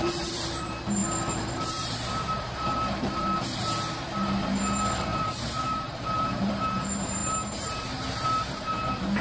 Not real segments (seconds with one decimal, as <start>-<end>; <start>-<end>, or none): 0.0-9.2